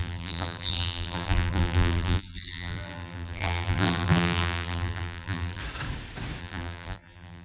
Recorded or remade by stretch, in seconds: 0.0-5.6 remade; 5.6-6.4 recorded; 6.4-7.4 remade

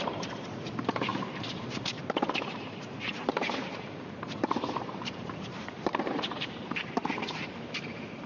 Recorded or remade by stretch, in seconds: 0.0-8.3 remade

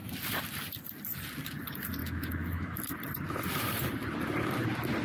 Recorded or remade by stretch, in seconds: 0.0-2.0 recorded; 2.0-2.8 remade; 2.8-5.0 recorded

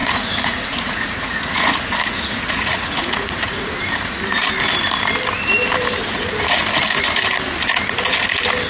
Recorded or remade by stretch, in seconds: 0.0-3.7 remade; 3.7-8.7 recorded